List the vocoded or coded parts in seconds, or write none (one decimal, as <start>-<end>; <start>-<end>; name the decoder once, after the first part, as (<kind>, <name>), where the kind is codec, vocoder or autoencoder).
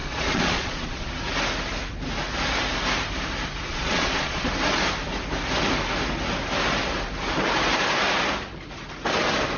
0.0-1.1 (vocoder, Vocos); 3.7-4.5